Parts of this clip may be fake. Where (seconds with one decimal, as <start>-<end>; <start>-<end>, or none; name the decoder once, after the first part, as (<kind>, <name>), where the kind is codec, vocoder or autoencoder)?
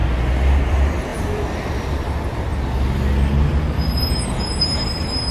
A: 0.7-2.5 (vocoder, BigVGAN v2); 4.0-5.3